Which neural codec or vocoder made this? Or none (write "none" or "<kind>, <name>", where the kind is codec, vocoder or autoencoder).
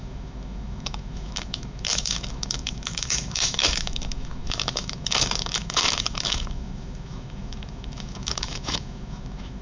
autoencoder, DAC-VAE